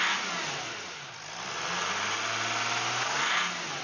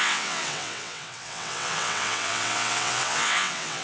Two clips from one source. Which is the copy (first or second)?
second